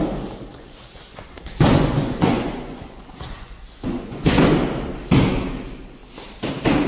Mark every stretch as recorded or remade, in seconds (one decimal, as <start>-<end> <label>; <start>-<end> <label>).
0.0-0.5 recorded; 0.5-4.4 remade; 4.4-6.9 recorded